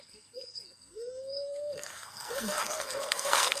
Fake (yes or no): yes